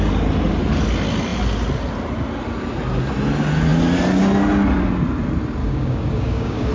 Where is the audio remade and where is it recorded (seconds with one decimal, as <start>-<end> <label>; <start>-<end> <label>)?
0.0-5.6 recorded; 5.6-6.7 remade

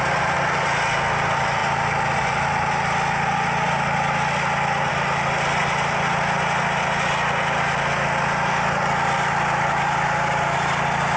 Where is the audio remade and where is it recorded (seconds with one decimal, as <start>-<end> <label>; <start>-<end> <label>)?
0.0-11.2 recorded

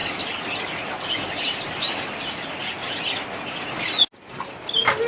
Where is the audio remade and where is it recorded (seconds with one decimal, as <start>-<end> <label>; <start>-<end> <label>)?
0.0-5.1 recorded

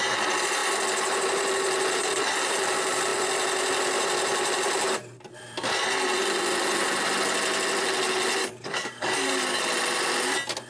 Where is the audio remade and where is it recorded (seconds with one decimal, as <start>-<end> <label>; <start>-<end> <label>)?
0.0-8.4 recorded; 8.4-9.6 remade; 9.6-10.7 recorded

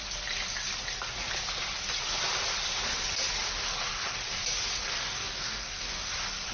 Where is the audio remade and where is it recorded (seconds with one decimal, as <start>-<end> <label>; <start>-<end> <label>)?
0.0-4.9 recorded; 4.9-6.1 remade; 6.1-6.5 recorded

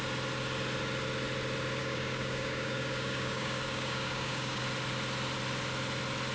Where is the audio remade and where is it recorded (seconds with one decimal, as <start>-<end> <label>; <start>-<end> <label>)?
0.0-1.8 recorded; 1.8-4.6 remade; 4.6-6.3 recorded

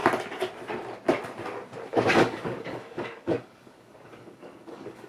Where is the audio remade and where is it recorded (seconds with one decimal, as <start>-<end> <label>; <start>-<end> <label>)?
0.0-1.9 recorded; 1.9-5.1 remade